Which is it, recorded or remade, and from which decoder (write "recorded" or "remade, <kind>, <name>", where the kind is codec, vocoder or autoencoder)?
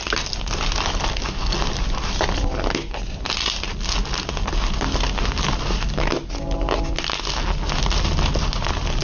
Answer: recorded